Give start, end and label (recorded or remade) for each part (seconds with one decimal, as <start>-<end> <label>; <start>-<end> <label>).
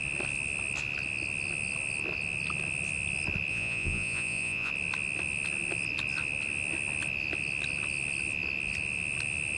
0.0-3.5 recorded; 3.5-4.7 remade; 4.7-9.6 recorded